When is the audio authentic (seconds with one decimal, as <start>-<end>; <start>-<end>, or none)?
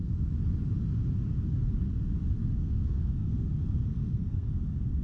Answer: 0.0-2.4; 4.5-5.0